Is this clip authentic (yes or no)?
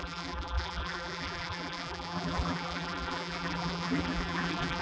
no